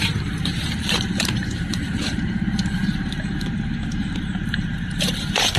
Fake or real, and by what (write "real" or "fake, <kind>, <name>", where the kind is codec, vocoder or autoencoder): fake, vocoder, BigVGAN v2